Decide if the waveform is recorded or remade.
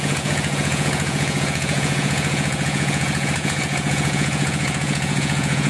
remade